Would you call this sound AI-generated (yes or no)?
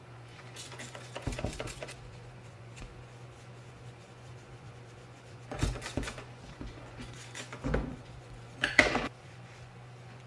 yes